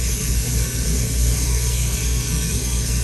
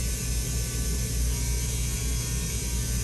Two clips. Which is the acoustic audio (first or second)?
second